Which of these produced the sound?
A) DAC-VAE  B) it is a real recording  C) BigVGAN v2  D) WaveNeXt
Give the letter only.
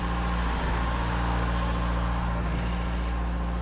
B